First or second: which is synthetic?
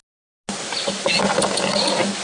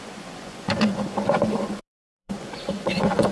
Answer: second